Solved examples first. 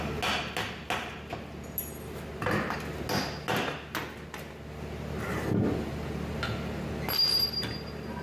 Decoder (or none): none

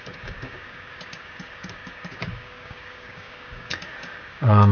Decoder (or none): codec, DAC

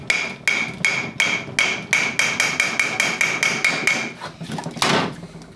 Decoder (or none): none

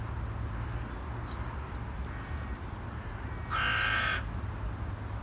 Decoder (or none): none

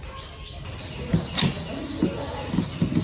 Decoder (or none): none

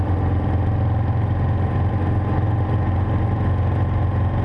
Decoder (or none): none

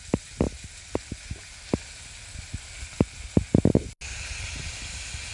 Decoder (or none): none